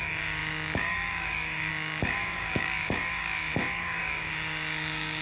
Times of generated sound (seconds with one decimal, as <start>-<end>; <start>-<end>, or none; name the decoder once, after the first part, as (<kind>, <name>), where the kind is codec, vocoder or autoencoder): 0.0-5.2 (codec, DAC)